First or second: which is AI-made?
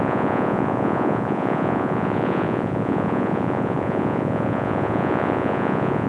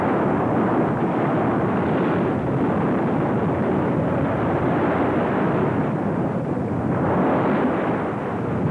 first